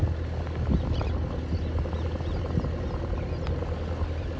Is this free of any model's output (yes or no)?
yes